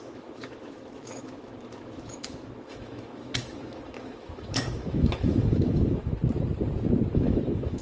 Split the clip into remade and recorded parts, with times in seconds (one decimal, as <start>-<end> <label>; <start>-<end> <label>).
0.0-6.1 remade; 6.1-7.1 recorded; 7.1-7.8 remade

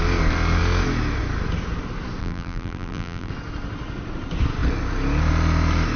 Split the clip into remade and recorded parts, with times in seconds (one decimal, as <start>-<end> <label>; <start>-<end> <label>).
0.0-2.2 recorded; 2.2-3.3 remade; 3.3-6.0 recorded

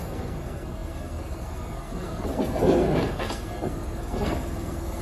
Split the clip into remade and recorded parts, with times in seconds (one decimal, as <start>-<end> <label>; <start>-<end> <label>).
0.0-5.0 remade

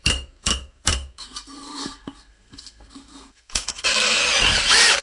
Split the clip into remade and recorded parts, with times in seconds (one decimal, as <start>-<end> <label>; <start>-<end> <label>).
0.0-4.2 remade; 4.2-5.0 recorded

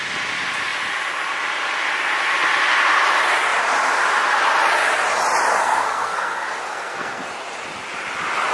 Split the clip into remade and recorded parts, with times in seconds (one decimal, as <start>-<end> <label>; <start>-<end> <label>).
0.0-5.5 recorded; 5.5-7.3 remade; 7.3-8.5 recorded

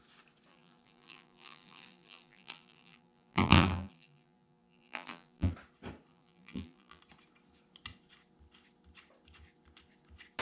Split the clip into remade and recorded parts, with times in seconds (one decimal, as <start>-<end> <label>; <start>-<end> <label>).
0.0-0.5 recorded; 0.5-5.5 remade; 5.5-6.1 recorded; 6.1-7.0 remade; 7.0-10.4 recorded